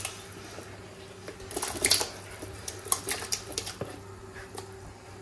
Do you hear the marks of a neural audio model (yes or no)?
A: no